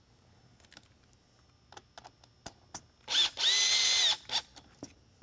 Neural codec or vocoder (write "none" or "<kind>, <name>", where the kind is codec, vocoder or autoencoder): none